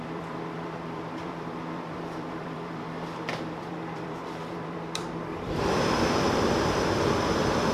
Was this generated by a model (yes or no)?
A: yes